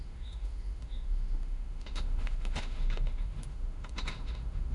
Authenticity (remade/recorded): remade